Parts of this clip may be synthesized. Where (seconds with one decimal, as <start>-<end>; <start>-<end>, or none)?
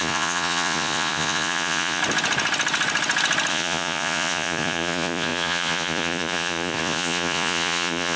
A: 0.0-2.0; 3.5-8.2